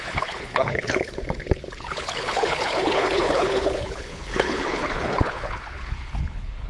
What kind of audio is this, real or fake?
fake